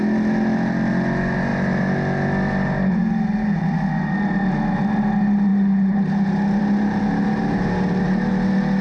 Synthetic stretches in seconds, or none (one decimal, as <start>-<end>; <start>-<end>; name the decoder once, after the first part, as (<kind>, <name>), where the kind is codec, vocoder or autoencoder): none